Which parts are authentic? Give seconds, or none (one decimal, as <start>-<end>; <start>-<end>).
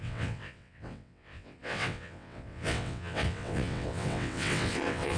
none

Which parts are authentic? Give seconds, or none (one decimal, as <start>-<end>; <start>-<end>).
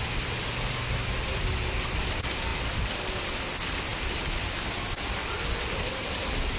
0.0-6.6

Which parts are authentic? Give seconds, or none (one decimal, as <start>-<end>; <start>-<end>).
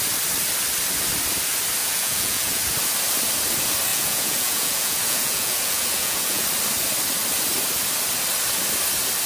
0.0-1.8; 2.6-3.9; 6.4-9.3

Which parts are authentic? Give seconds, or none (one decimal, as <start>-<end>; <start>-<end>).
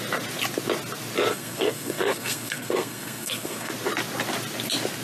0.0-1.3; 3.7-5.0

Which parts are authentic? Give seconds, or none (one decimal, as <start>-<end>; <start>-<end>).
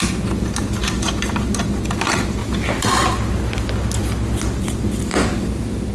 0.0-5.9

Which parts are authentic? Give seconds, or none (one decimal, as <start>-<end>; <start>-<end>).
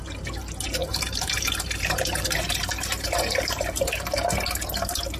0.0-0.8; 3.9-5.2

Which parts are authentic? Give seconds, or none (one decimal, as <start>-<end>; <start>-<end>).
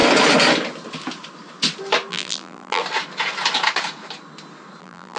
0.0-2.1; 2.8-4.8